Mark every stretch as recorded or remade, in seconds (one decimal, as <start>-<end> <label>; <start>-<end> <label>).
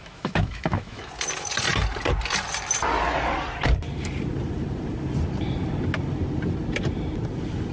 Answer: 0.0-1.1 remade; 1.1-7.7 recorded